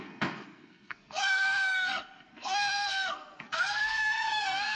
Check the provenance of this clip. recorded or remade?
remade